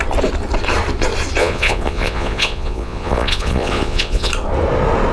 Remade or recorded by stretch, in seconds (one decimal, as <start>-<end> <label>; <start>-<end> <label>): 0.0-1.4 recorded; 1.4-4.3 remade; 4.3-5.1 recorded